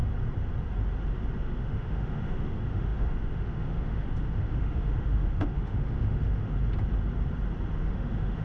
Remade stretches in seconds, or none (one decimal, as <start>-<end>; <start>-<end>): 1.4-6.6; 7.8-8.4